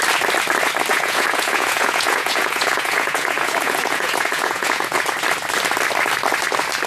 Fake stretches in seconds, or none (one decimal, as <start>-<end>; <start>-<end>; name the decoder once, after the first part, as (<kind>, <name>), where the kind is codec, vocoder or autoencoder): 0.9-5.0 (vocoder, Vocos)